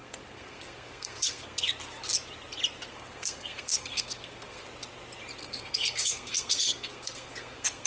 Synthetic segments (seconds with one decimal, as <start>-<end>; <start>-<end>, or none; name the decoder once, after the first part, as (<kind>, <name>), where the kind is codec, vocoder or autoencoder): 0.0-1.7 (codec, SNAC); 2.9-4.6; 5.4-7.9

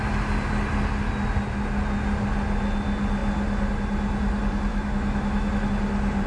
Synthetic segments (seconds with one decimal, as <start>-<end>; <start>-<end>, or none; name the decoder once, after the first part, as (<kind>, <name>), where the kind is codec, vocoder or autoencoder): 4.7-5.7 (autoencoder, DAC-VAE)